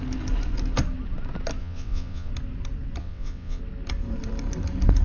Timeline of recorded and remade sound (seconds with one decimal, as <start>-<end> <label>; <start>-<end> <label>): 0.0-1.6 recorded; 1.6-2.3 remade; 2.3-3.0 recorded; 3.0-3.6 remade; 3.6-5.0 recorded

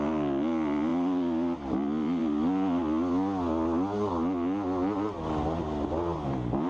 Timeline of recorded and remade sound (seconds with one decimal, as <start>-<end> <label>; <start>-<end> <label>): 0.0-6.7 recorded

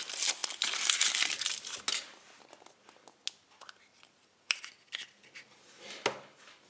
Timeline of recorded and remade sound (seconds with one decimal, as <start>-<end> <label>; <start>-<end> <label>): 0.0-6.7 recorded

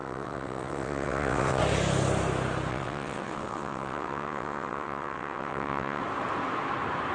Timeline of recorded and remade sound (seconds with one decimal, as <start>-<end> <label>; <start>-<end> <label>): 0.0-1.6 remade; 1.6-2.7 recorded; 2.7-6.0 remade; 6.0-7.1 recorded

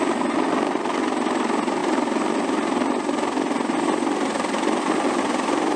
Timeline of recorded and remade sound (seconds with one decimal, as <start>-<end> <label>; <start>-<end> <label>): 0.0-5.8 recorded

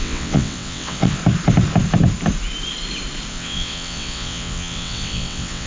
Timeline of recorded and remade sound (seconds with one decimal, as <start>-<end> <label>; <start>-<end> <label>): 0.0-1.2 remade; 1.2-3.3 recorded; 3.3-5.7 remade

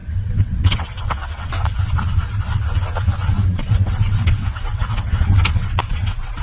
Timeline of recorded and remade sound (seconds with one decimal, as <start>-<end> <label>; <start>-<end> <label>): 0.0-1.5 remade; 1.5-3.5 recorded; 3.5-6.4 remade

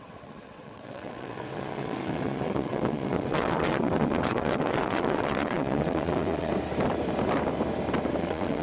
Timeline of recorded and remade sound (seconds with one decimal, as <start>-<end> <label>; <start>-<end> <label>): 0.0-6.5 remade; 6.5-8.2 recorded; 8.2-8.6 remade